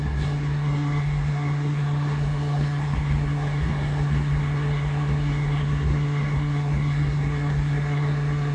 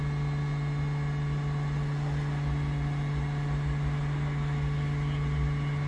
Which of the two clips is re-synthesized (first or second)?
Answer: first